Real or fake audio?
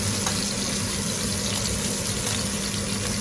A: real